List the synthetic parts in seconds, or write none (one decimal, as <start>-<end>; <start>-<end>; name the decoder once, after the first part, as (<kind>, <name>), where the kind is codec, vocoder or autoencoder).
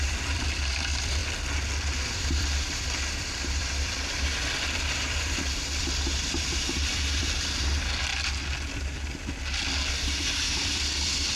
0.0-1.2 (vocoder, BigVGAN v2); 2.0-8.1; 10.5-11.4